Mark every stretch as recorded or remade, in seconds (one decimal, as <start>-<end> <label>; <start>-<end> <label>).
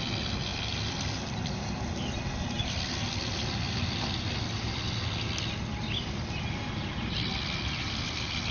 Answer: 0.0-8.5 recorded